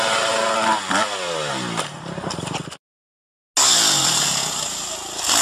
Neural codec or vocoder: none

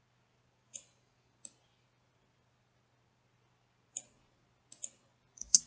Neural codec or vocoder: none